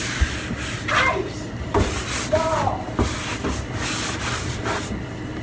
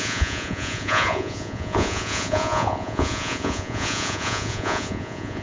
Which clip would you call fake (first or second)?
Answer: second